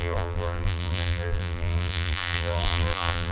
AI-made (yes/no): yes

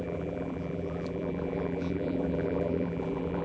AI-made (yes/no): yes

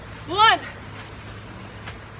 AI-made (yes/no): no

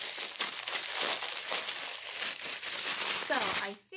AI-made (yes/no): yes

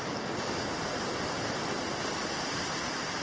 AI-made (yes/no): no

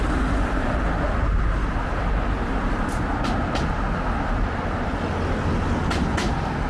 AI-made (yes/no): no